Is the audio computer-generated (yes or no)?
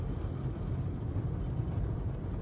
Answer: no